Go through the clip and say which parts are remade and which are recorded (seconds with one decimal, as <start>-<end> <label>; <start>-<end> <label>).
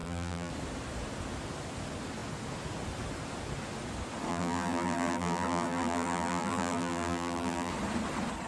0.0-0.5 remade; 0.5-4.3 recorded; 4.3-7.7 remade; 7.7-8.5 recorded